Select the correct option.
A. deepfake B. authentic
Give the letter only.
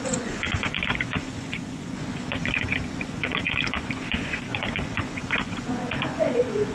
A